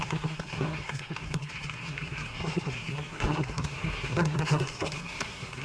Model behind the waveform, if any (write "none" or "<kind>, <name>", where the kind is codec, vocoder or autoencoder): codec, SNAC